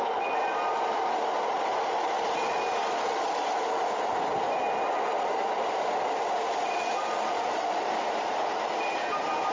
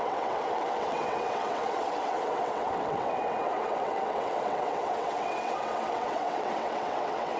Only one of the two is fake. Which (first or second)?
second